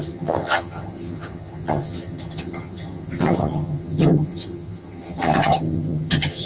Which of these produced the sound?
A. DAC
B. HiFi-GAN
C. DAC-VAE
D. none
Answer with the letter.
B